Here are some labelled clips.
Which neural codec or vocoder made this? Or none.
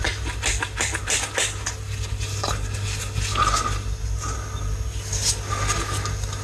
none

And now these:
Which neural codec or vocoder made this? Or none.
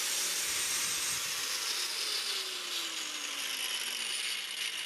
none